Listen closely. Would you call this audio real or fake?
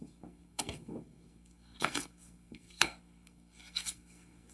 fake